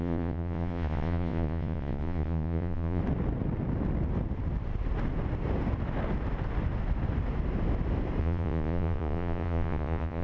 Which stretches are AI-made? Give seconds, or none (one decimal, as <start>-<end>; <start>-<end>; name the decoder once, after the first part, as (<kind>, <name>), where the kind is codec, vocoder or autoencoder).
0.0-3.0 (vocoder, Vocos); 8.2-10.2